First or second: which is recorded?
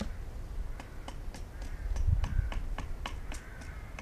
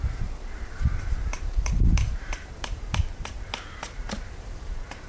first